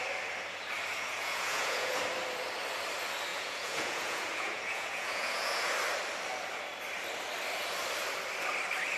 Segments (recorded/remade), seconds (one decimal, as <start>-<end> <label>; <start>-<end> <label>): 0.0-0.9 recorded; 0.9-2.0 remade; 2.0-3.3 recorded; 3.3-5.7 remade; 5.7-9.0 recorded